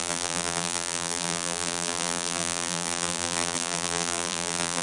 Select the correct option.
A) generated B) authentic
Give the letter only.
A